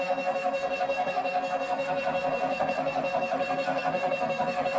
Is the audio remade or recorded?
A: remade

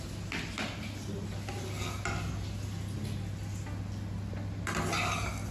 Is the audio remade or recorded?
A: recorded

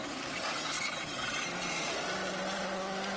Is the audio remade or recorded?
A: recorded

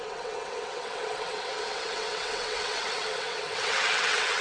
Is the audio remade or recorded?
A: remade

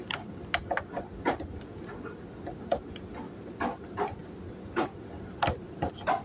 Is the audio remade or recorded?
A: recorded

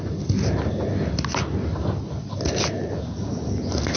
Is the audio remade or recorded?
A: recorded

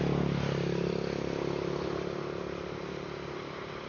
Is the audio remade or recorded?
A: recorded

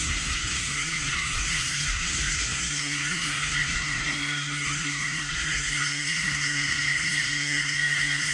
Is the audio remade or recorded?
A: remade